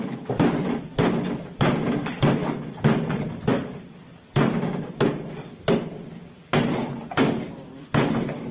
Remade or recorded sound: recorded